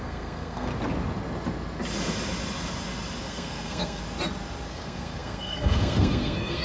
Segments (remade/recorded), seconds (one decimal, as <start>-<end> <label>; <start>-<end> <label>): 0.0-0.7 remade; 0.7-3.2 recorded; 3.2-4.0 remade; 4.0-4.7 recorded; 4.7-6.6 remade